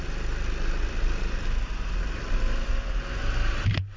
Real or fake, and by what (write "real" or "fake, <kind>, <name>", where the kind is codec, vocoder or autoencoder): real